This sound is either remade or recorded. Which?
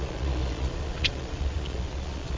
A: remade